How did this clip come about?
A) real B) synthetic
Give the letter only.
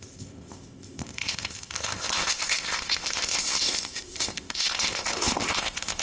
B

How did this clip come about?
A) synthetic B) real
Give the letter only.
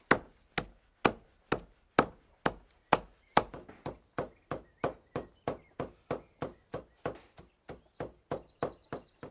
B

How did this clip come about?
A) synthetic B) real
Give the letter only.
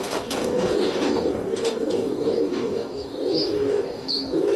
A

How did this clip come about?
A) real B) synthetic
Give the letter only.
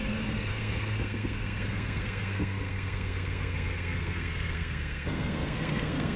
B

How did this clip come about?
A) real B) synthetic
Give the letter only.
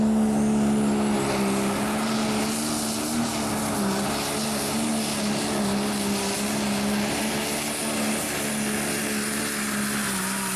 A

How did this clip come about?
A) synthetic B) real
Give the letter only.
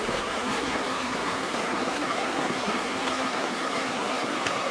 A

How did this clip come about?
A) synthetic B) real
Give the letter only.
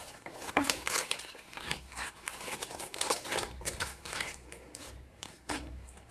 A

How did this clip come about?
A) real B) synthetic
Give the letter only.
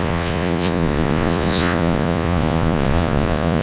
B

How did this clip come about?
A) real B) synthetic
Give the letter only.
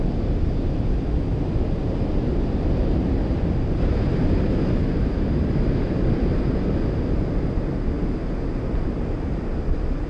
A